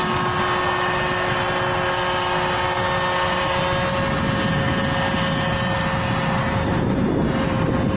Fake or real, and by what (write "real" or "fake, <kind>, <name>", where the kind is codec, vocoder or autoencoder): real